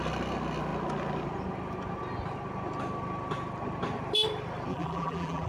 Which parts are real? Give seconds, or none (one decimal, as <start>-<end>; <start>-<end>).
0.0-4.7